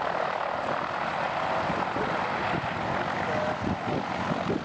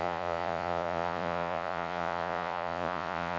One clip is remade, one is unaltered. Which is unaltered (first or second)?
first